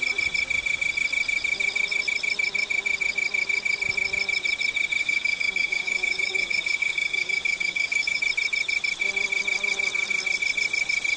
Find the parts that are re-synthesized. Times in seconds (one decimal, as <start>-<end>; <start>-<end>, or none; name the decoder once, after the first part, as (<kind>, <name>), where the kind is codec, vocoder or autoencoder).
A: 5.0-8.2 (codec, DAC)